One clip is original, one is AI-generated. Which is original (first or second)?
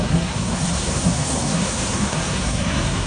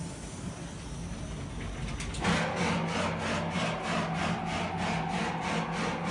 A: second